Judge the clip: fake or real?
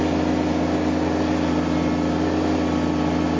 real